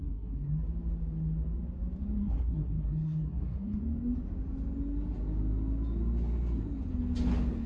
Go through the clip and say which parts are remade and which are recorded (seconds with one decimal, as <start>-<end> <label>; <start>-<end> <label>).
0.0-0.5 remade; 0.5-2.2 recorded; 2.2-3.8 remade; 3.8-7.7 recorded